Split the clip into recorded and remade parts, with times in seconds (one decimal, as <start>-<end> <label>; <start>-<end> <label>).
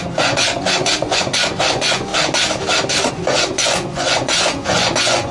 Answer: 0.0-2.1 remade; 2.1-3.1 recorded; 3.1-5.3 remade